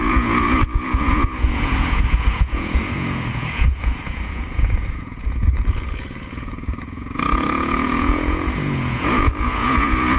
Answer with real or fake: fake